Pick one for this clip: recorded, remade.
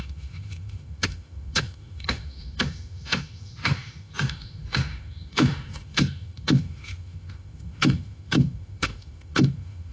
remade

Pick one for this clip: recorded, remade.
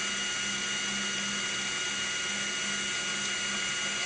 recorded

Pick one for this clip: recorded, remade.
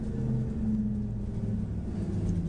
recorded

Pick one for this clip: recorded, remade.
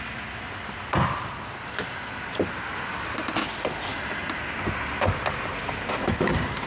recorded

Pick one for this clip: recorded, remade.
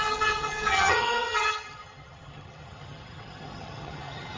remade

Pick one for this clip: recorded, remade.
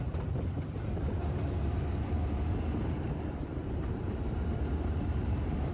remade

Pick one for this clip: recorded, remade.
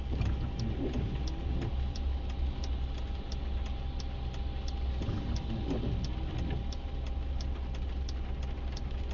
recorded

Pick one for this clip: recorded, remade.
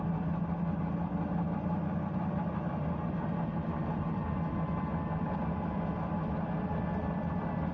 recorded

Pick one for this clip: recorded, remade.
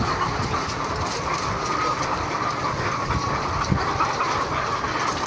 recorded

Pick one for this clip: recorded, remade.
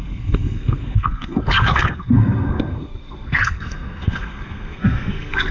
remade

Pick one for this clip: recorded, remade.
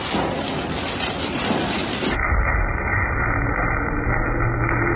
recorded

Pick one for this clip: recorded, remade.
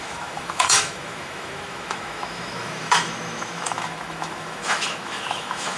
remade